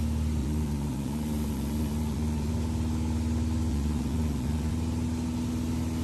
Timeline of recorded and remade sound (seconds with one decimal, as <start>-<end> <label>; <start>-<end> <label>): 0.0-0.4 recorded; 0.4-2.5 remade; 2.5-3.7 recorded; 3.7-4.7 remade; 4.7-6.0 recorded